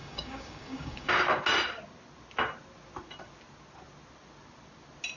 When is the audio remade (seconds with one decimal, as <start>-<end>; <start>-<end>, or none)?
0.0-1.1